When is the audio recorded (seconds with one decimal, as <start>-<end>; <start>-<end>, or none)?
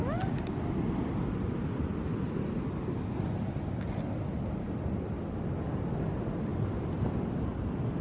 0.0-8.0